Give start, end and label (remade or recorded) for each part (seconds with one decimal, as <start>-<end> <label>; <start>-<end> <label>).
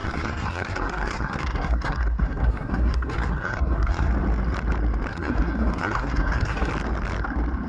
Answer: 0.0-4.1 remade; 4.1-5.1 recorded; 5.1-6.7 remade; 6.7-7.7 recorded